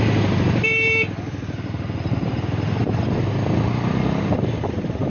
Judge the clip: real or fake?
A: real